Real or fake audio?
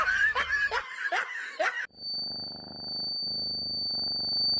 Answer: real